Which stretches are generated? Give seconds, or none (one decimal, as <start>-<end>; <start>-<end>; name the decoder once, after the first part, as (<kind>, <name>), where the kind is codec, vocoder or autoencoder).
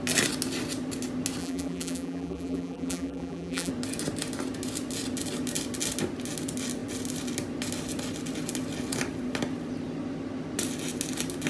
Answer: 1.4-3.7 (vocoder, BigVGAN v2)